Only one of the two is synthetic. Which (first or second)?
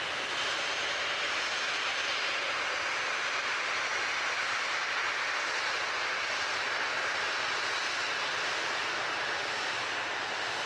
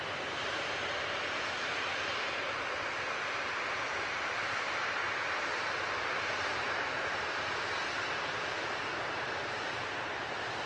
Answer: second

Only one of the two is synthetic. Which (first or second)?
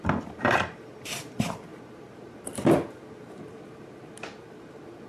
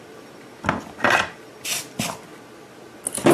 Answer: first